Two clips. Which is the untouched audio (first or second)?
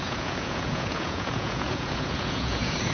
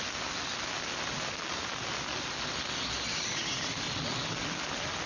second